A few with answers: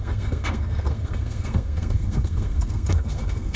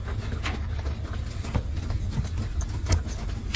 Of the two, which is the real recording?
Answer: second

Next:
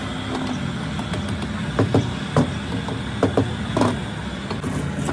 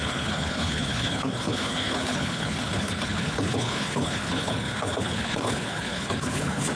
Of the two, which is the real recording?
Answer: first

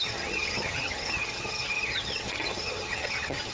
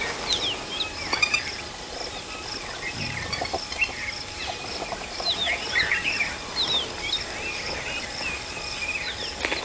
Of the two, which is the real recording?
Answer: second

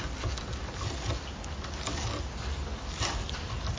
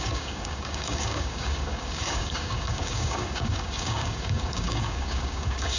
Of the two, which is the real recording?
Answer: first